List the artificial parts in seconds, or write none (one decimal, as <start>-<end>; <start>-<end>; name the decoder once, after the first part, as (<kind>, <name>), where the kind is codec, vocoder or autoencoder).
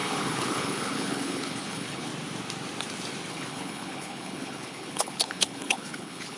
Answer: 0.0-2.1 (codec, HILCodec); 3.3-6.4